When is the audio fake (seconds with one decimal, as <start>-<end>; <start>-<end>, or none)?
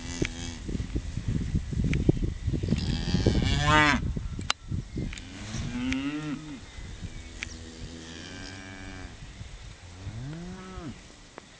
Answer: none